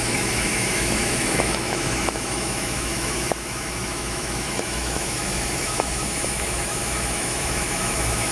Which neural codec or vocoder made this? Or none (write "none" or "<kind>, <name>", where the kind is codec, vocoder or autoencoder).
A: autoencoder, DAC-VAE